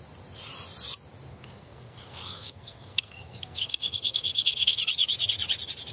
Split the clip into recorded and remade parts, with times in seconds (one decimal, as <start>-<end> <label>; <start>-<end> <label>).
0.0-1.3 recorded; 1.3-4.8 remade; 4.8-5.9 recorded